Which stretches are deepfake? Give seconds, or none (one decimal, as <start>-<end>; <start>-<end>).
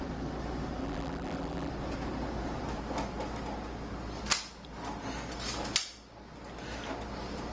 0.8-1.7